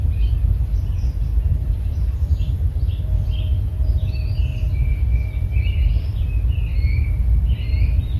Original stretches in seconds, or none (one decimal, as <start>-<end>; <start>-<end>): 0.0-1.5; 2.9-8.2